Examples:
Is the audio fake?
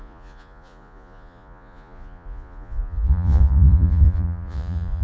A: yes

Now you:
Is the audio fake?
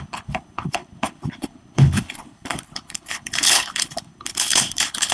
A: yes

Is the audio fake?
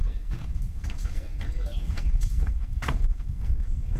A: yes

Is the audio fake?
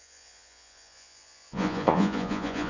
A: yes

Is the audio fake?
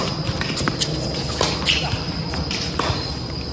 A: no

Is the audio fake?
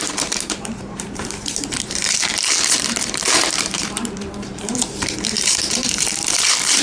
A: yes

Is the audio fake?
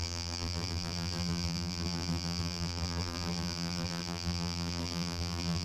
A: yes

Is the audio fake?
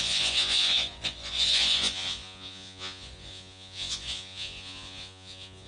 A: yes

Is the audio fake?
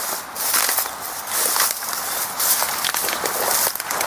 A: no